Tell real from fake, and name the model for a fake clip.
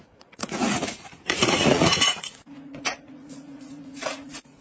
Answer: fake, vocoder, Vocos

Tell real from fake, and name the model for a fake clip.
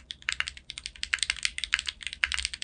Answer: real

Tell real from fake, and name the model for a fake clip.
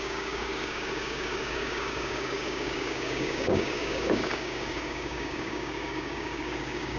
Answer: fake, codec, DAC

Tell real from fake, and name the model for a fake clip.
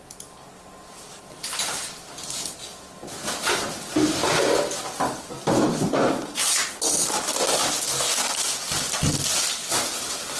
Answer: real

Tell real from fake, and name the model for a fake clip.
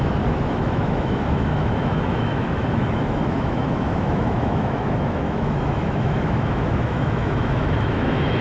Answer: fake, autoencoder, DAC-VAE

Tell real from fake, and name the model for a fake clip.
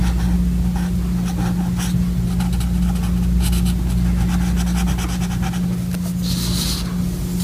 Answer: real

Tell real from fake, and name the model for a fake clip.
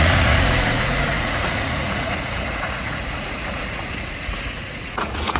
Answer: fake, vocoder, Vocos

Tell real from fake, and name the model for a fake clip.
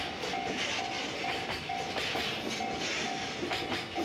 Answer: real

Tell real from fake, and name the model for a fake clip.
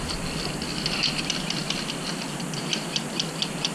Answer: real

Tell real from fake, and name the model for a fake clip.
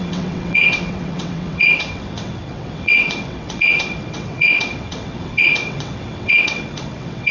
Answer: fake, vocoder, WaveNeXt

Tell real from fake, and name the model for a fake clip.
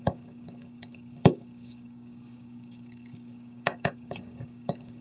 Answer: fake, codec, DAC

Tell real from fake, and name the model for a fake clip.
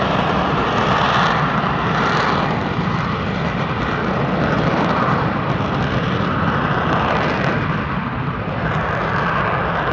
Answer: fake, vocoder, BigVGAN v2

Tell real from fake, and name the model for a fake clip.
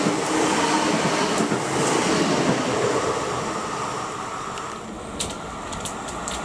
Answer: real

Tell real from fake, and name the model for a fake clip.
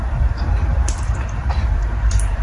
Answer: fake, vocoder, BigVGAN v2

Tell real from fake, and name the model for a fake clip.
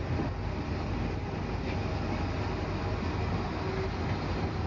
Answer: real